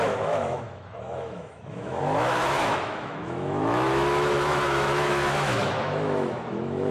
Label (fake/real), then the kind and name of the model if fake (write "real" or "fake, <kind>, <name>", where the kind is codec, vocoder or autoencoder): fake, autoencoder, DAC-VAE